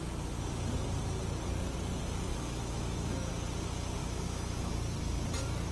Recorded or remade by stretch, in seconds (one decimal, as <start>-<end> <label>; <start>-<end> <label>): 0.0-2.3 recorded; 2.3-3.3 remade; 3.3-4.0 recorded; 4.0-4.7 remade; 4.7-5.7 recorded